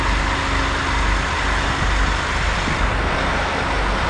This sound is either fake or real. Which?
real